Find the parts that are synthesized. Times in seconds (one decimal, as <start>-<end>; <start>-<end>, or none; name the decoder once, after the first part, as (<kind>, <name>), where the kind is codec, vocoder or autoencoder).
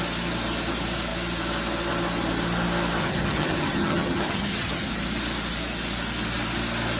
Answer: 3.0-4.9 (vocoder, HiFi-GAN)